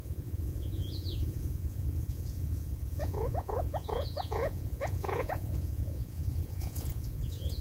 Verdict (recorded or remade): remade